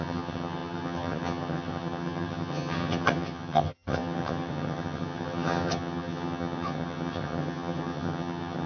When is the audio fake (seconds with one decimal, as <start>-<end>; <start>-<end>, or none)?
0.0-8.7